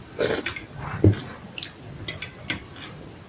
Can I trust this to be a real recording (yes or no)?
yes